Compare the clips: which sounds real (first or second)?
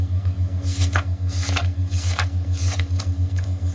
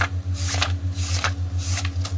second